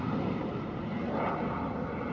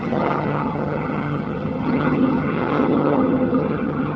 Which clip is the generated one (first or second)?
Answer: second